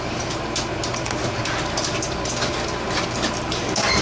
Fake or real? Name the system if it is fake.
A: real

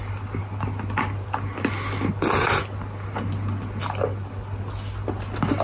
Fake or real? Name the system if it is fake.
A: real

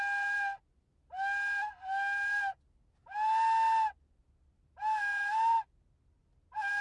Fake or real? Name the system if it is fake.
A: real